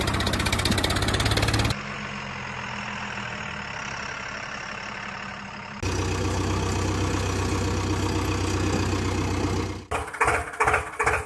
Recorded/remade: recorded